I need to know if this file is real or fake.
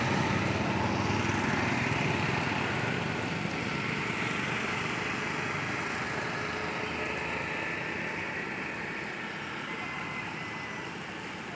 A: real